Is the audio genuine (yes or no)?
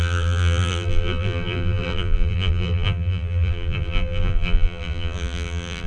no